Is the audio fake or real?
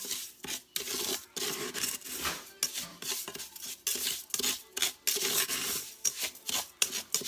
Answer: real